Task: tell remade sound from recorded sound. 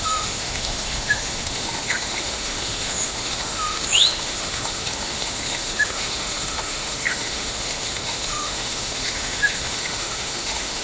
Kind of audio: remade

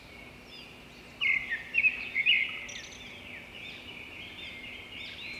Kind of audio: recorded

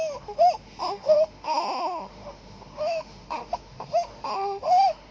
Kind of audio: remade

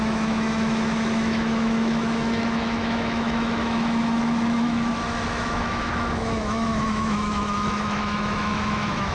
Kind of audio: remade